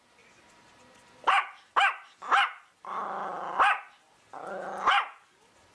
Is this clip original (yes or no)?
yes